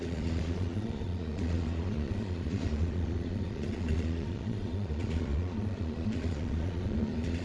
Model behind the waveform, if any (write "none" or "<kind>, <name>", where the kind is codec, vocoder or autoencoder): vocoder, Vocos